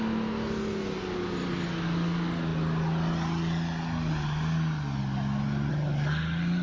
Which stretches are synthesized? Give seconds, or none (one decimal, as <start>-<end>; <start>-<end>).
none

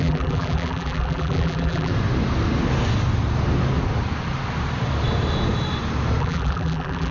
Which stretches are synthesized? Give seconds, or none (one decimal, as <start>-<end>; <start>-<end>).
0.0-1.9; 6.2-7.1

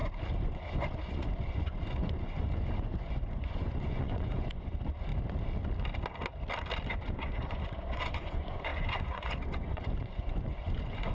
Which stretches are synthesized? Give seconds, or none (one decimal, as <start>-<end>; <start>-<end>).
0.0-5.1; 6.9-11.1

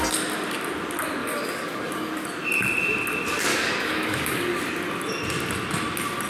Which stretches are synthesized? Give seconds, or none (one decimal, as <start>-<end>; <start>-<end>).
1.2-2.2; 3.5-4.6